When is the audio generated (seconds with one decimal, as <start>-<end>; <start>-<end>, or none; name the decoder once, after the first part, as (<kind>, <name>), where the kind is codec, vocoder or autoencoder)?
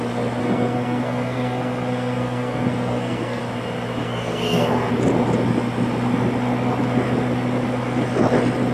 0.4-3.4 (codec, SNAC); 4.0-4.9